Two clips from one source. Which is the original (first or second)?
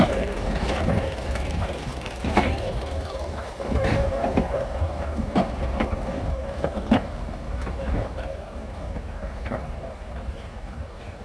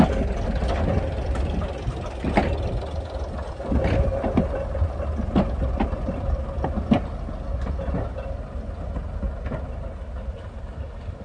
second